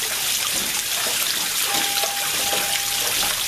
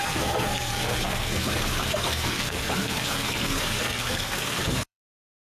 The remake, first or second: second